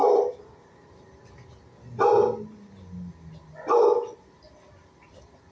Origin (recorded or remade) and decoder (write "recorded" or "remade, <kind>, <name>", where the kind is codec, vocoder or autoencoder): recorded